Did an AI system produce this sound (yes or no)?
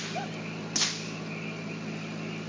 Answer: no